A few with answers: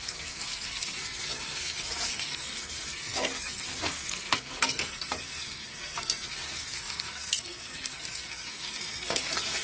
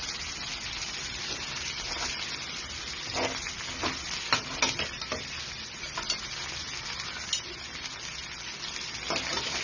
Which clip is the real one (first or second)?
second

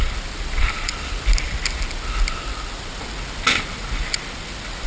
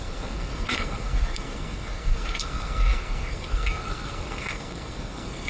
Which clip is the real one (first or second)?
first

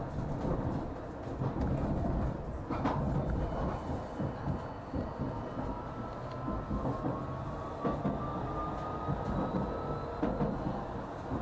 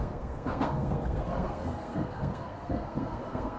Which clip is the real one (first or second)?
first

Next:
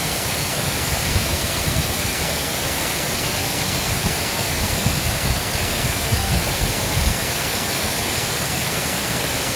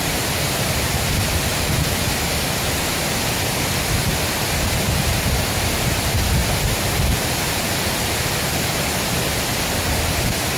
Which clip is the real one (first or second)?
second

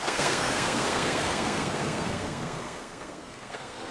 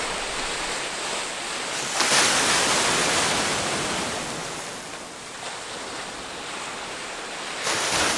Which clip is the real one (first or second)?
second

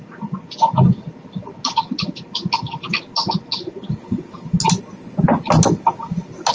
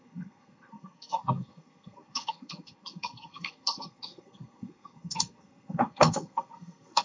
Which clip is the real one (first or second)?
first